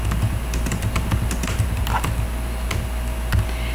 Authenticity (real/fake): real